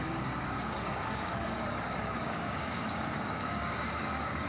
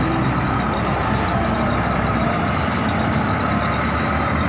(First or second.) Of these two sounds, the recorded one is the second